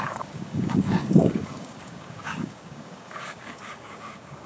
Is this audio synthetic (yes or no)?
yes